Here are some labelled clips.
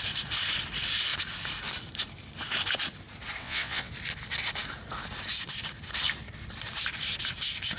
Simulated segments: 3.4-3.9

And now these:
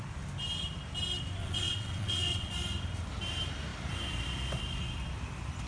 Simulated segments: 1.4-2.5